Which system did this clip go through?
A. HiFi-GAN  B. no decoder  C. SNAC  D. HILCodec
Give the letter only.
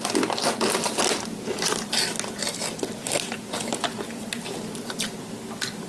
B